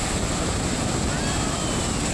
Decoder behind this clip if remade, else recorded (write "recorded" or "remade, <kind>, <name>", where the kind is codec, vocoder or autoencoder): recorded